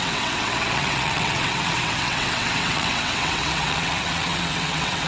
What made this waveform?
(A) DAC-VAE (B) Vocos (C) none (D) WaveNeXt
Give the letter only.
D